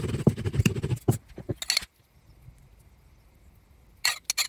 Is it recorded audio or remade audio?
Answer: recorded